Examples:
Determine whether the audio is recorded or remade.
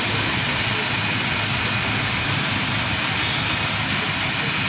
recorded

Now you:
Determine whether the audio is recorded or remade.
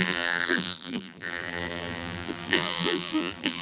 remade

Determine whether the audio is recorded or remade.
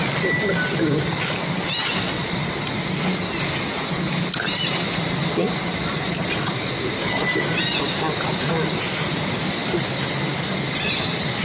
recorded